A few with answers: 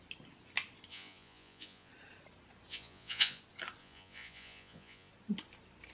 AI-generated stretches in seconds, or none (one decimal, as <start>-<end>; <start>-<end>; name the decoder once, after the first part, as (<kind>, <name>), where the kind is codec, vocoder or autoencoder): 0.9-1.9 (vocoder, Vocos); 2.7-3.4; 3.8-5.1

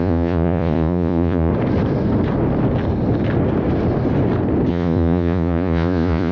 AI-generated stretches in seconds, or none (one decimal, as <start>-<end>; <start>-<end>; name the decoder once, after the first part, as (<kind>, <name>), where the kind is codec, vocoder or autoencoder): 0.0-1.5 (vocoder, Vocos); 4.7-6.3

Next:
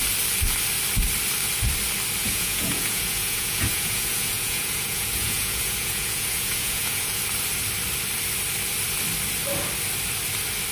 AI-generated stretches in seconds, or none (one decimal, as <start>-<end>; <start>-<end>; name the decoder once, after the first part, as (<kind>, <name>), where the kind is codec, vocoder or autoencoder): 2.2-7.2 (vocoder, Vocos)

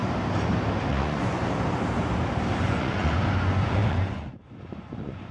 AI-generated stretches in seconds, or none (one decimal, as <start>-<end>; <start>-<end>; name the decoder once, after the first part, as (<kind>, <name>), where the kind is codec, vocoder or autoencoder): 0.9-1.4 (vocoder, Vocos); 2.6-5.3

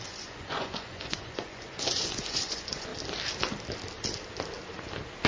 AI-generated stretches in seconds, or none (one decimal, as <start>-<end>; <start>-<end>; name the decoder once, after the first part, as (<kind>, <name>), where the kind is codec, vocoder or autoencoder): 0.0-2.9 (vocoder, Vocos)

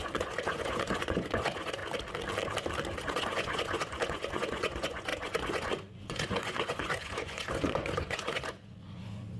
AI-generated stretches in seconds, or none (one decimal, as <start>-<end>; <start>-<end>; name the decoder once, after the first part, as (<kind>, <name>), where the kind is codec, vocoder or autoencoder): 0.0-1.8 (vocoder, Vocos); 3.0-9.4